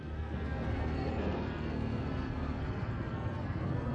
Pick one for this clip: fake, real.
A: fake